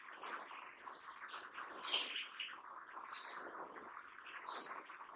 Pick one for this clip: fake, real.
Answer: real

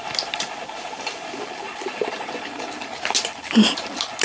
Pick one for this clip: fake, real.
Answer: real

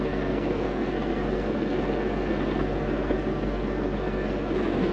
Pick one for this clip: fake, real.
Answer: fake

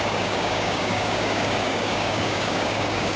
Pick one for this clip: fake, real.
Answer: fake